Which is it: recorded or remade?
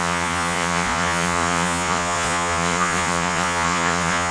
remade